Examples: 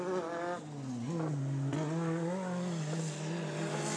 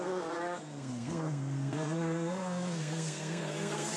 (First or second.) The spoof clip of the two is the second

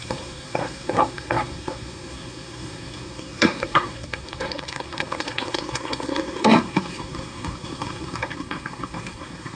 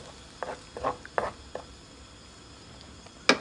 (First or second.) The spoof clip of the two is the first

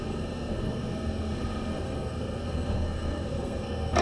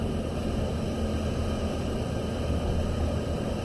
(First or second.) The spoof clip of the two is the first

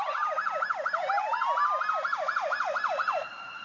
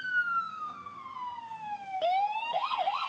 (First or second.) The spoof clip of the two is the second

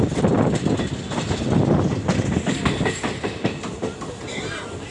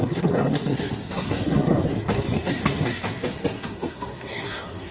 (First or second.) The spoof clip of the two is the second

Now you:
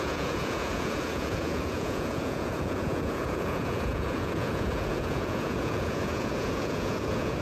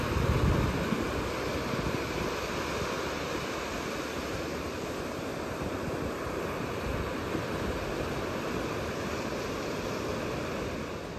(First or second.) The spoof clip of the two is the first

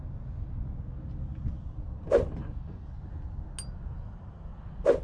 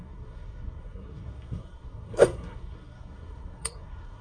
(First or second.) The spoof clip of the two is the second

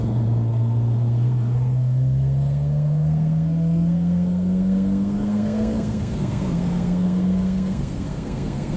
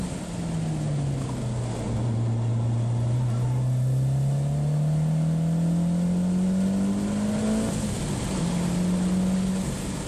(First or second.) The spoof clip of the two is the first